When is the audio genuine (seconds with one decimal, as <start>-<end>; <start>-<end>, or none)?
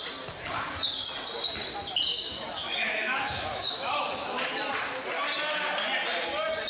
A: 0.0-2.1; 4.4-6.7